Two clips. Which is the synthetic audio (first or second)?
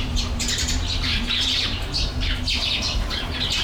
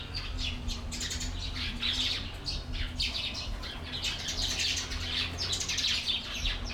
first